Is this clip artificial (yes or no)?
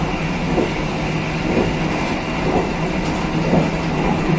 no